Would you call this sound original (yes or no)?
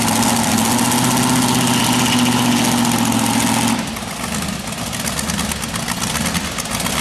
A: yes